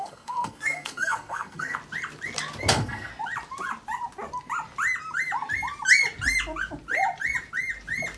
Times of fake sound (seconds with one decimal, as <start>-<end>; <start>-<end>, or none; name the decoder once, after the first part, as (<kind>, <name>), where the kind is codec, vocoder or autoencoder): 0.0-1.8 (codec, SNAC); 2.7-3.1